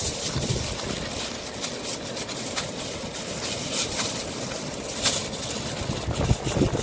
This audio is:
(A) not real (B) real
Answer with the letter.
B